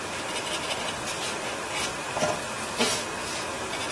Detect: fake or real real